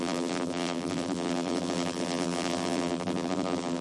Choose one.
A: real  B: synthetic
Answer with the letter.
B